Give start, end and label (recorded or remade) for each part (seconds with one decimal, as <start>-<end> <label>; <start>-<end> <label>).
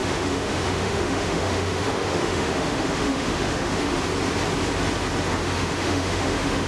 0.0-4.0 remade; 4.0-5.4 recorded; 5.4-6.7 remade